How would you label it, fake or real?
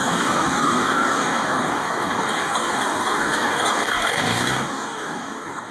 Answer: fake